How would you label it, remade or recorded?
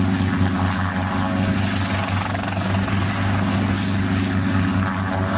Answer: recorded